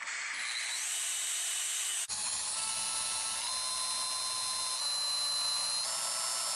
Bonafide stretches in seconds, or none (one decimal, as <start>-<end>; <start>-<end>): 0.0-1.9; 2.7-6.6